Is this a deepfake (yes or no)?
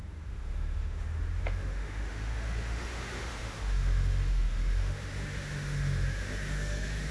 yes